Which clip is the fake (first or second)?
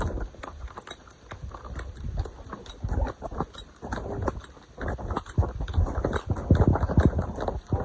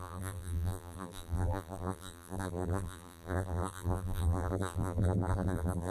second